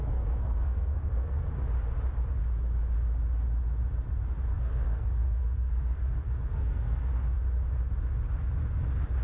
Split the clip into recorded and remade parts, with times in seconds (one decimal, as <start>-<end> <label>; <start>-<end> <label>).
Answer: 0.0-1.5 remade; 1.5-4.5 recorded; 4.5-7.1 remade; 7.1-9.2 recorded